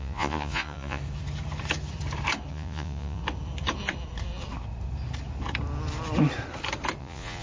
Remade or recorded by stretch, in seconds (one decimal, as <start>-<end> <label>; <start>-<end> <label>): 0.0-1.0 remade; 1.0-2.5 recorded; 2.5-3.2 remade; 3.2-7.0 recorded; 7.0-7.4 remade